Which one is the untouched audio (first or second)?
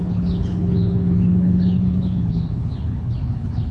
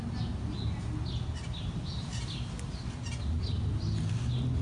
second